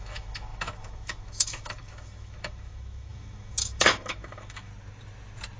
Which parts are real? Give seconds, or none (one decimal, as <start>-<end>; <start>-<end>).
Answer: 4.7-5.6